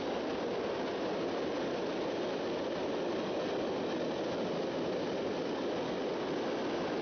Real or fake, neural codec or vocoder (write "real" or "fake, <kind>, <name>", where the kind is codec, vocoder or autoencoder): real